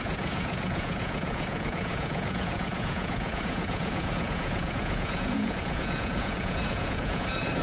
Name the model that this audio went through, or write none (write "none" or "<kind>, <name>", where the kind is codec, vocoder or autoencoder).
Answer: vocoder, Vocos